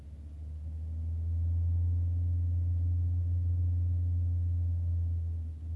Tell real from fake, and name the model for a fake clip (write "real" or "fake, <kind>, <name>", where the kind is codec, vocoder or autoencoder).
real